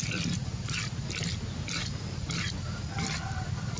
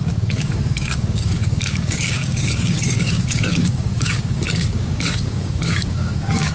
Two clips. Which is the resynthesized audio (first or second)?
second